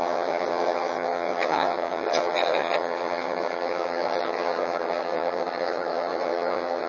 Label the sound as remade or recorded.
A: remade